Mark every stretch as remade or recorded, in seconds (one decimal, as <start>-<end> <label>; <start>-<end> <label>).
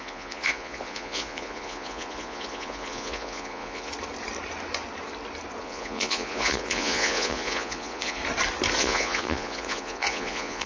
0.0-3.9 remade; 3.9-5.6 recorded; 5.6-8.2 remade; 8.2-8.8 recorded; 8.8-10.7 remade